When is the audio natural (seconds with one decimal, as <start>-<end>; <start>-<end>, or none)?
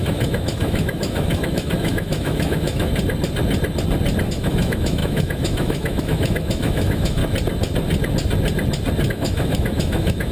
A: 2.9-4.3; 7.2-9.1